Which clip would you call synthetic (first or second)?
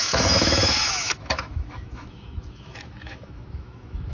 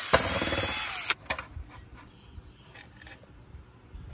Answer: first